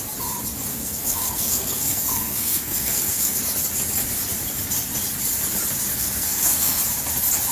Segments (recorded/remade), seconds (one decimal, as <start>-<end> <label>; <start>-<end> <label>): 0.0-0.7 recorded; 0.7-3.4 remade; 3.4-5.9 recorded; 5.9-6.8 remade; 6.8-7.5 recorded